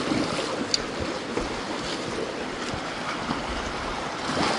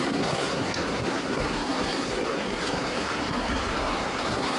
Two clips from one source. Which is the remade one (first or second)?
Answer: second